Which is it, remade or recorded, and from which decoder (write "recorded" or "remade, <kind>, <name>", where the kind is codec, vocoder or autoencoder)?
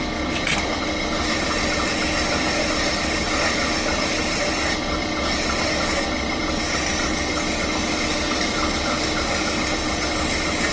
recorded